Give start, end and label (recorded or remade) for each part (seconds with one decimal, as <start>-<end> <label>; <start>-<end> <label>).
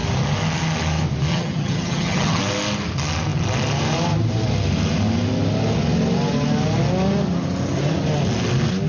0.0-1.3 recorded; 1.3-2.4 remade; 2.4-8.9 recorded